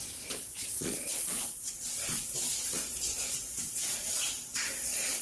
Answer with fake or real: fake